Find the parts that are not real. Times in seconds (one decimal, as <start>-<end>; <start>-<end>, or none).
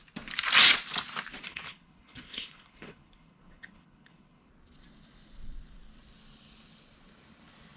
1.5-4.5